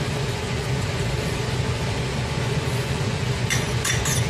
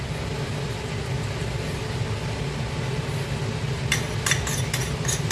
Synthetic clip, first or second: first